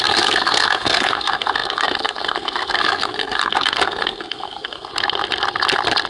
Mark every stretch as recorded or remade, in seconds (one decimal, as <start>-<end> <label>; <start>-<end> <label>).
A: 0.0-4.9 remade; 4.9-6.1 recorded